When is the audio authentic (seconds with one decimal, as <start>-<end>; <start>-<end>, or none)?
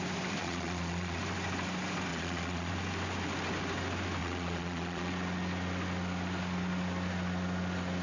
0.0-0.4; 1.2-2.1; 2.7-4.2; 5.1-8.0